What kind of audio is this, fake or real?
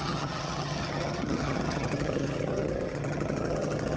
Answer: fake